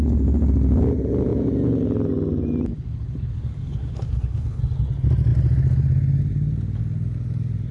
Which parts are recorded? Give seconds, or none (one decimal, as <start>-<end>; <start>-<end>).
0.0-2.7; 4.6-7.7